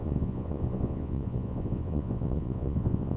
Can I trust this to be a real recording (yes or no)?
no